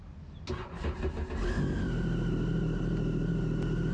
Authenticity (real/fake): real